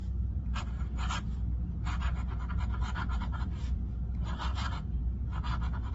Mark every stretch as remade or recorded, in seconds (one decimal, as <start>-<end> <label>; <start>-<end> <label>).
0.0-0.6 remade; 0.6-3.2 recorded; 3.2-4.1 remade; 4.1-4.5 recorded; 4.5-5.0 remade; 5.0-5.9 recorded